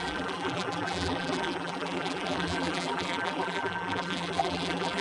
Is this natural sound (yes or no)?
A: no